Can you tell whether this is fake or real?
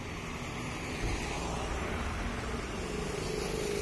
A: real